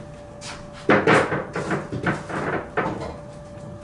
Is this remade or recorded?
recorded